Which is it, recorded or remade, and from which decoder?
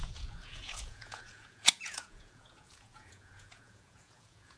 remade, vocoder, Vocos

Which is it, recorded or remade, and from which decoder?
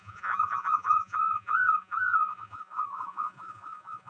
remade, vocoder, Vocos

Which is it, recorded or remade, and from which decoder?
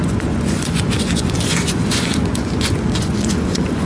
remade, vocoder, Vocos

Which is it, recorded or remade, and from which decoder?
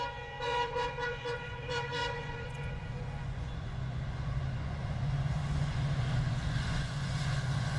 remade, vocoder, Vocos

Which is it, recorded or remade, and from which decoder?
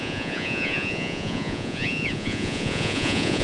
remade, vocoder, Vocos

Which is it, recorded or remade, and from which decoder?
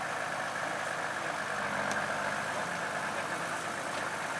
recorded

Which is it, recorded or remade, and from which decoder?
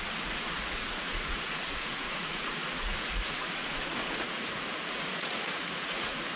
remade, vocoder, Vocos